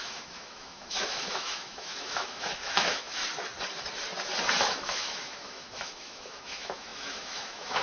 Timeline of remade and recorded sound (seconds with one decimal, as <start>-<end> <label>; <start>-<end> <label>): 0.0-3.2 remade; 3.2-4.6 recorded; 4.6-7.8 remade